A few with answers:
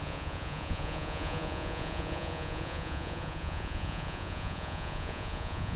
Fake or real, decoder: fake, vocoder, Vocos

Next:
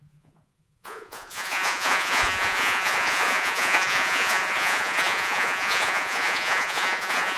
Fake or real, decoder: fake, vocoder, Vocos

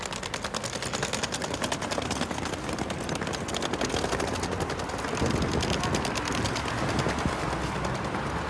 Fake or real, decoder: real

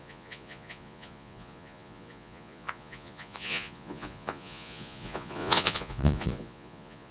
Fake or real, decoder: fake, vocoder, Vocos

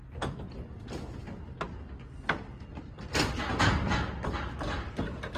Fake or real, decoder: real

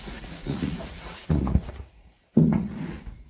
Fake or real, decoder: fake, vocoder, Vocos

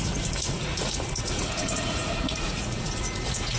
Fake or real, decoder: fake, vocoder, Vocos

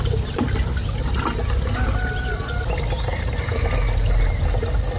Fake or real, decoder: real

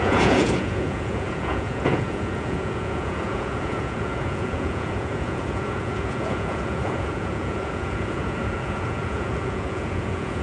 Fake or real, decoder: fake, vocoder, Vocos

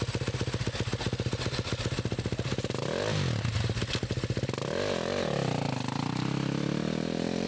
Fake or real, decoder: real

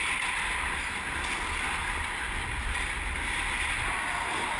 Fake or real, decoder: real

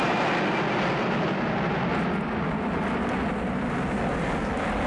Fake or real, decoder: real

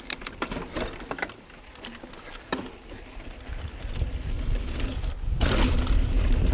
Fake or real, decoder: real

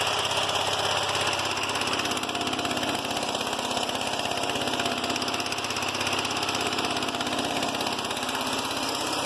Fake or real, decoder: real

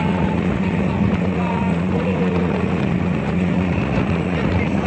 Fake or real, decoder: fake, vocoder, Vocos